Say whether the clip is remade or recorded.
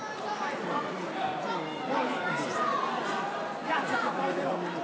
recorded